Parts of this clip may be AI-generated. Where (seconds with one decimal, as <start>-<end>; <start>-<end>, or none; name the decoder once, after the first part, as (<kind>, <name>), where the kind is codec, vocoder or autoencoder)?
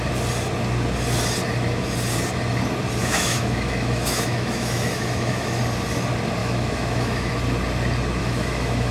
3.0-5.6 (autoencoder, DAC-VAE); 6.4-7.3; 8.2-8.9